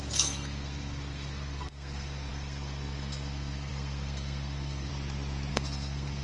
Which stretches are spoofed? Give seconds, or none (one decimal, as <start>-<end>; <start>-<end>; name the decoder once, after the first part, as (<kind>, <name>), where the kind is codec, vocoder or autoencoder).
0.0-4.9 (codec, SNAC); 5.5-6.2